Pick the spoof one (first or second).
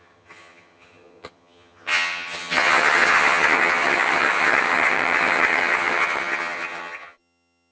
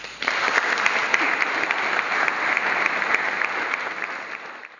first